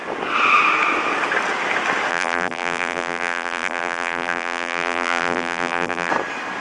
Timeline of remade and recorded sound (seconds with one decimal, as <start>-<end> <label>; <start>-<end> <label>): 0.0-2.1 recorded; 2.1-6.1 remade; 6.1-6.6 recorded